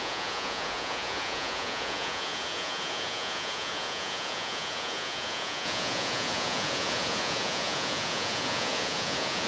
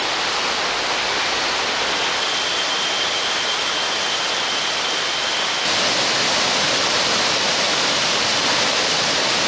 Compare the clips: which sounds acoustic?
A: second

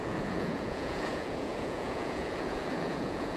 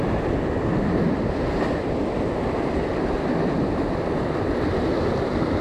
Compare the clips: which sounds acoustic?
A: second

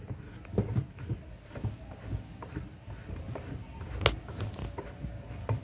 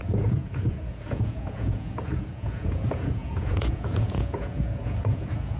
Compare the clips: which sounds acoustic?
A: first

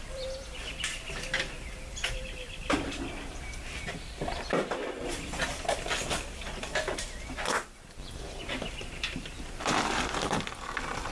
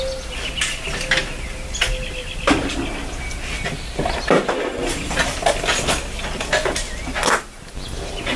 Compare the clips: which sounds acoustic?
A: second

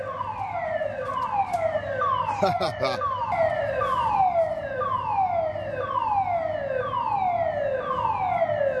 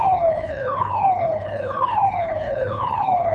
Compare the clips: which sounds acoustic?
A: first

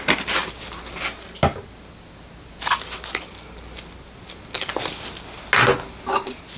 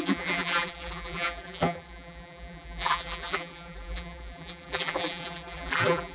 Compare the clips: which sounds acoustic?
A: first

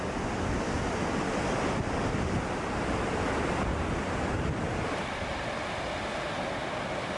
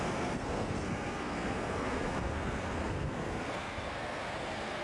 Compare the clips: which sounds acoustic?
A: first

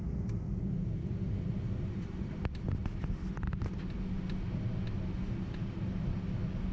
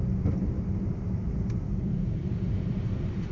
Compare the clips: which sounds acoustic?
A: first